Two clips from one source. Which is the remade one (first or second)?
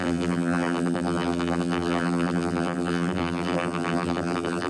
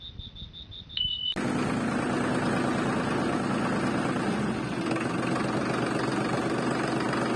first